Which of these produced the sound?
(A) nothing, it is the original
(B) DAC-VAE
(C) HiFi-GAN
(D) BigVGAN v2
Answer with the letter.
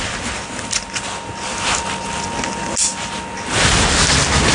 A